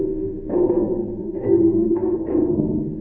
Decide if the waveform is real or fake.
fake